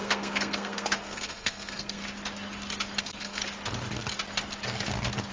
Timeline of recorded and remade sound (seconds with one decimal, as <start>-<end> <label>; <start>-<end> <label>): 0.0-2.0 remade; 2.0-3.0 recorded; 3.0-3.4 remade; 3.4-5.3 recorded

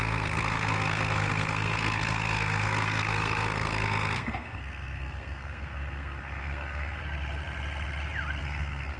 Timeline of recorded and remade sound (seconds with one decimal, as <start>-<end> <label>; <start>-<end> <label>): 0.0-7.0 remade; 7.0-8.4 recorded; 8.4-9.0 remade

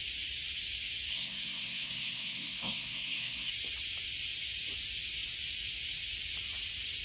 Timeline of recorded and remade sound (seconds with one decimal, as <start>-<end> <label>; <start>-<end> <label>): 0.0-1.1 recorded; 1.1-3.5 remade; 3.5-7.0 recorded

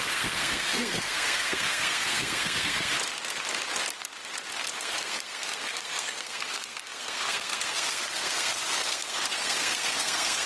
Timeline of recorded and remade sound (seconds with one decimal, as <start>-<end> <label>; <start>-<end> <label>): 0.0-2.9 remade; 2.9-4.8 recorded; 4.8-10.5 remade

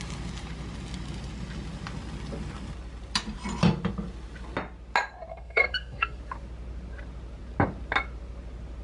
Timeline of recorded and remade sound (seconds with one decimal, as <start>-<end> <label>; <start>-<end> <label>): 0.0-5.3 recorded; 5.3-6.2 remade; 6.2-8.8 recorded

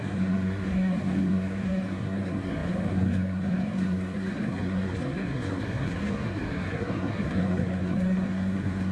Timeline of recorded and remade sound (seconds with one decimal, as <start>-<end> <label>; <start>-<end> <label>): 0.0-8.9 remade

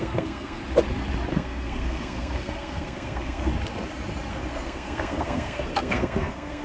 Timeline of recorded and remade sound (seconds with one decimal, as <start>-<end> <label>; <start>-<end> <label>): 0.0-0.6 remade; 0.6-1.3 recorded; 1.3-3.5 remade; 3.5-4.3 recorded; 4.3-6.6 remade

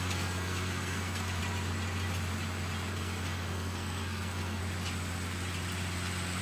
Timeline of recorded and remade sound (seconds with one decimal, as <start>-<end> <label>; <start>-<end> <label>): 0.0-1.4 remade; 1.4-2.9 recorded; 2.9-4.6 remade; 4.6-6.4 recorded